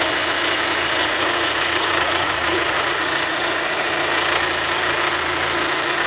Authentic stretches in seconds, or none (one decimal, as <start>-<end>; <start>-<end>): 0.0-1.0; 3.9-6.1